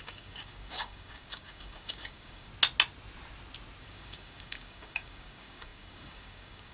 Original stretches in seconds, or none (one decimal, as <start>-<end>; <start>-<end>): 2.5-3.8